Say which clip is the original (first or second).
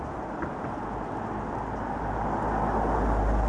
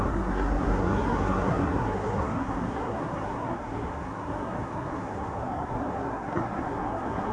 first